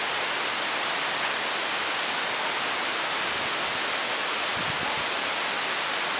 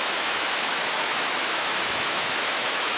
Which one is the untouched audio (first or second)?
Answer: first